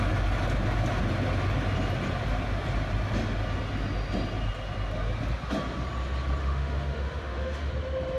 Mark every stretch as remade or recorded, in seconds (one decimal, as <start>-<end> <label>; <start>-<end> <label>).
0.0-6.4 recorded; 6.4-7.7 remade; 7.7-8.2 recorded